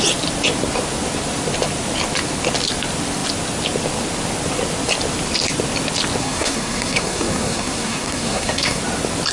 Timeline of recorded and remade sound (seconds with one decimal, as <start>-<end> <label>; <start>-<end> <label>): 0.0-6.2 recorded; 6.2-8.8 remade; 8.8-9.3 recorded